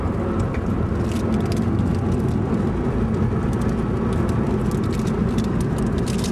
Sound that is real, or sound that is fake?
real